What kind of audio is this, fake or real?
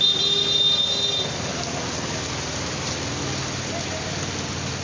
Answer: real